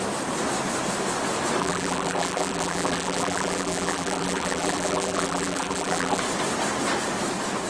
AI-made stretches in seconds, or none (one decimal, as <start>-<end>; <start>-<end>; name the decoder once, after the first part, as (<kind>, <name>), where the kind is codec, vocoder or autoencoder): 1.6-6.2 (vocoder, BigVGAN v2)